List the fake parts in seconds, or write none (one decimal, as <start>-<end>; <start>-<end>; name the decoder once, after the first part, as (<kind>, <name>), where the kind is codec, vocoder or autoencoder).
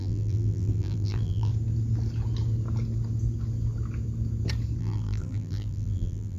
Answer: 0.0-1.5 (vocoder, BigVGAN v2); 4.8-6.4